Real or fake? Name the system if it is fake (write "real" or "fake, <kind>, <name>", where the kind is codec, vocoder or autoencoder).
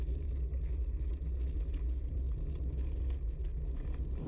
real